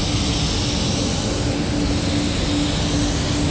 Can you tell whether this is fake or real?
real